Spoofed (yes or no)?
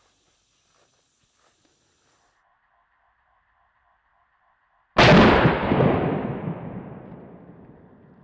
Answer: no